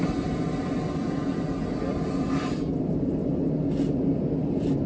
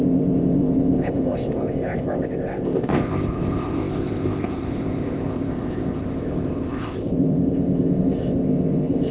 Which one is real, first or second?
first